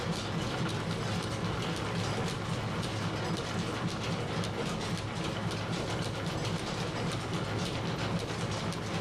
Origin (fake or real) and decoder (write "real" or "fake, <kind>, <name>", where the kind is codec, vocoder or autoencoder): real